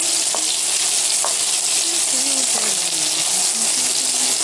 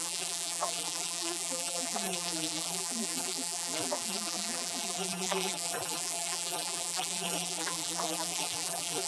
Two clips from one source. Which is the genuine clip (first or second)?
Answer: first